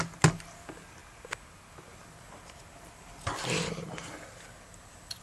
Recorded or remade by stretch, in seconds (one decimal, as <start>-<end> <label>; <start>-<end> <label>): 0.0-5.2 recorded